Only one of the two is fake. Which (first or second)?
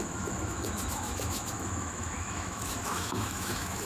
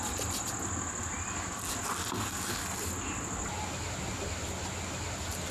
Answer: first